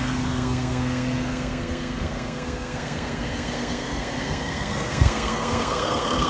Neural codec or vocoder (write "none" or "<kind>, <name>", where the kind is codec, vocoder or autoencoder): codec, SNAC